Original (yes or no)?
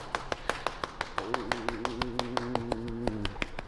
yes